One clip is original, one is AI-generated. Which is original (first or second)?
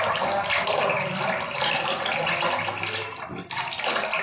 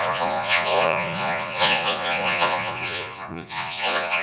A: first